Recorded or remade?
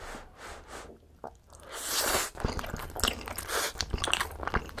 recorded